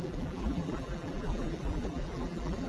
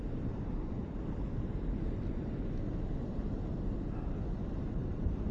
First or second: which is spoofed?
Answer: first